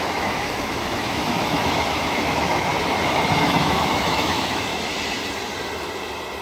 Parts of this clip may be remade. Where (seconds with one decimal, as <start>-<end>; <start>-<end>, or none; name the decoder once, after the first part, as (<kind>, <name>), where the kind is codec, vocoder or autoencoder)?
0.0-2.7 (autoencoder, DAC-VAE); 3.4-4.7